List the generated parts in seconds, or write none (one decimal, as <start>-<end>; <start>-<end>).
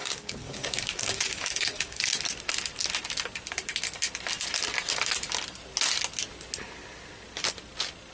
0.0-2.2